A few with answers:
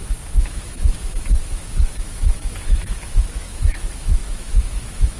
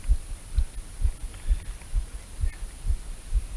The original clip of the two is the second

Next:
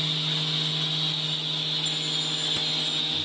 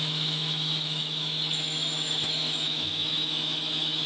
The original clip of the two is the first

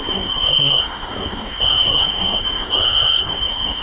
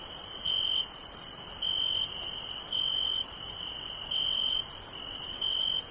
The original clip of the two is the second